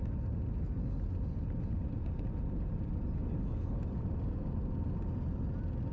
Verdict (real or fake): real